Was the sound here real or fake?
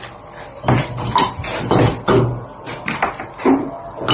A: real